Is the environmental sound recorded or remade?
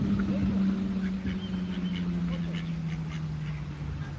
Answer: recorded